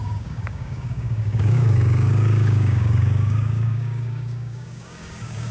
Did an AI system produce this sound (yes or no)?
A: yes